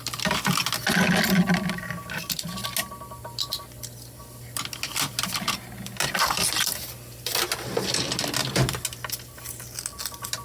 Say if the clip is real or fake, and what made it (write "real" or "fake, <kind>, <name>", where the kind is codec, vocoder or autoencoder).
real